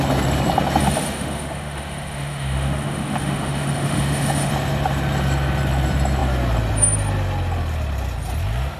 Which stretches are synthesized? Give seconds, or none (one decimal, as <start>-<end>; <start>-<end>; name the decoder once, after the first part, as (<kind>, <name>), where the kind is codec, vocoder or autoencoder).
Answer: 0.8-4.5 (autoencoder, DAC-VAE)